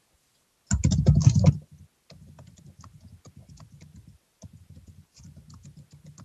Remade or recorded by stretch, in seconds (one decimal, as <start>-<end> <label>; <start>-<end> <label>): 0.0-6.2 recorded

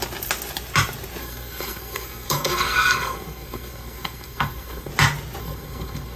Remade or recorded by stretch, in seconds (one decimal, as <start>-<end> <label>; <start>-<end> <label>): 0.0-1.2 recorded; 1.2-4.9 remade; 4.9-5.4 recorded; 5.4-6.2 remade

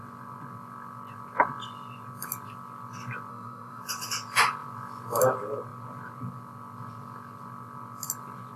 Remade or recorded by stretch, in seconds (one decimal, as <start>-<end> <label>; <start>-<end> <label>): 0.0-3.3 recorded; 3.3-3.8 remade; 3.8-8.6 recorded

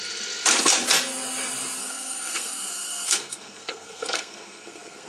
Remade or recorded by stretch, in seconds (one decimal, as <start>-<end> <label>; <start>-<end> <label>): 0.0-1.8 recorded; 1.8-5.1 remade

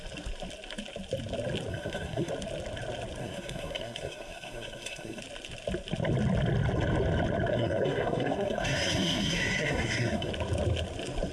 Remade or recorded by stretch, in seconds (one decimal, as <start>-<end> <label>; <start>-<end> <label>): 0.0-1.7 recorded; 1.7-2.3 remade; 2.3-3.2 recorded; 3.2-5.2 remade; 5.2-7.5 recorded; 7.5-10.3 remade; 10.3-11.3 recorded

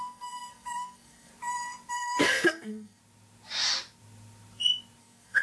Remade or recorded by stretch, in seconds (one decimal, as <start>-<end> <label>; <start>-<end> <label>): 0.0-1.3 remade; 1.3-1.9 recorded; 1.9-3.0 remade; 3.0-5.0 recorded; 5.0-5.4 remade

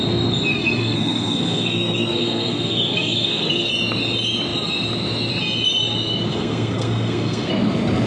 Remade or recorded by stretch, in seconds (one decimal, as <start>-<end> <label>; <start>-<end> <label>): 0.0-0.5 recorded; 0.5-3.7 remade; 3.7-6.3 recorded; 6.3-7.5 remade; 7.5-8.1 recorded

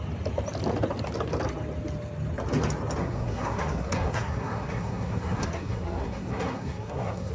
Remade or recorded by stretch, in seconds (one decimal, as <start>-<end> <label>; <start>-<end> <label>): 0.0-3.0 recorded; 3.0-7.3 remade